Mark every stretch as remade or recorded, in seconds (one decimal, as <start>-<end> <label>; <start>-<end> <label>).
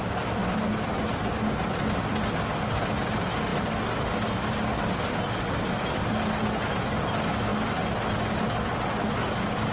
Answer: 0.0-9.7 recorded